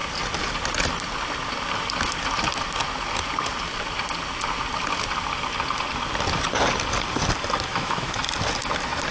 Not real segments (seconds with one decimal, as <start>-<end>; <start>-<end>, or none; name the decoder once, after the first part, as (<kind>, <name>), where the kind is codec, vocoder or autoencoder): 7.7-8.2 (autoencoder, DAC-VAE)